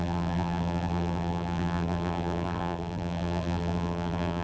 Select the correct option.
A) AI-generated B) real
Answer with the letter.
A